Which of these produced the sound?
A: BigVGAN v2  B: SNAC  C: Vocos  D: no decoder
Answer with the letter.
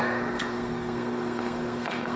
B